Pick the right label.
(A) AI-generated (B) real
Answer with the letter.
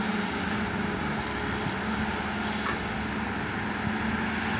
B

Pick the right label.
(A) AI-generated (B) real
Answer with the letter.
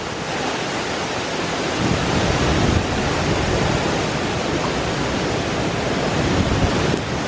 B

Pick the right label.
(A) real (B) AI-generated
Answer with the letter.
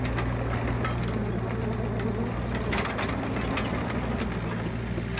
A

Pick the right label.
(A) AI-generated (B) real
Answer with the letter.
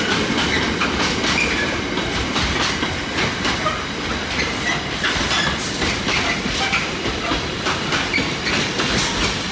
B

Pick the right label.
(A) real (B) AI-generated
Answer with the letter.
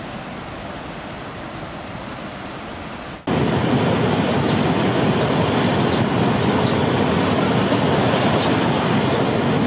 A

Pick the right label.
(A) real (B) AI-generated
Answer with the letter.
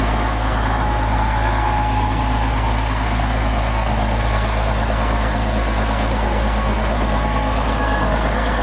B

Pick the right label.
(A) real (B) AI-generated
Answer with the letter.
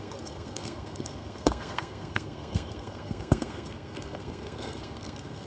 B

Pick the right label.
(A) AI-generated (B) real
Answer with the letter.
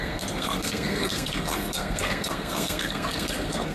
A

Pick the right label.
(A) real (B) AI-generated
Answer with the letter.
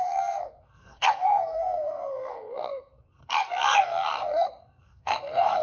B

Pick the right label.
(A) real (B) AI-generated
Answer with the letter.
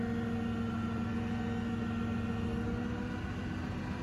A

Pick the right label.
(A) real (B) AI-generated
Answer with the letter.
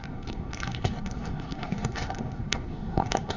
B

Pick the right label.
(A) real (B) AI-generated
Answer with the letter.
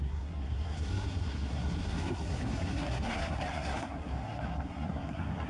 B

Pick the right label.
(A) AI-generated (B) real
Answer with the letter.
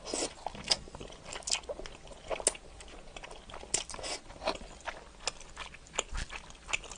B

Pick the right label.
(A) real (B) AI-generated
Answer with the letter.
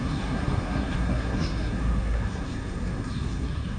B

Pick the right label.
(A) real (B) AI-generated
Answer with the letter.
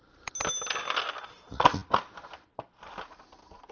A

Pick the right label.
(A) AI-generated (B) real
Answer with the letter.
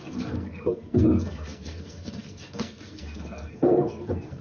A